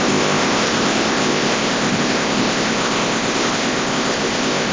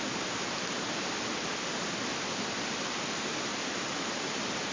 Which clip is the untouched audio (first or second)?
second